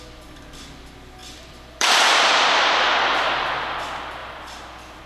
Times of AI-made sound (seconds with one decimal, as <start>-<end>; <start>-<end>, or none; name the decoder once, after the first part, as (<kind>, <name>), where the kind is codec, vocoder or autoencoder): 1.2-3.0 (vocoder, BigVGAN v2); 4.2-5.1